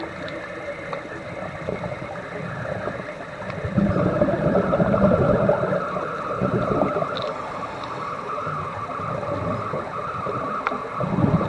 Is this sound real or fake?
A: real